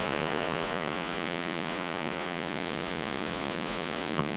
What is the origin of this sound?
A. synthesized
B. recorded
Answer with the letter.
A